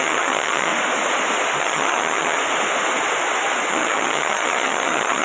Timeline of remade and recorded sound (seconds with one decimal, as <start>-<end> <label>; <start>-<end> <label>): 0.0-0.7 remade; 0.7-1.6 recorded; 1.6-2.4 remade; 2.4-3.7 recorded; 3.7-5.2 remade